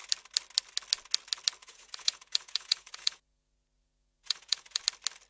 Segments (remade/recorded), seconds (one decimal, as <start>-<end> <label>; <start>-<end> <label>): 0.0-1.6 recorded; 1.6-4.8 remade; 4.8-5.3 recorded